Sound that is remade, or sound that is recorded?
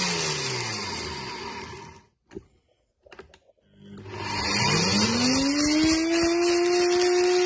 recorded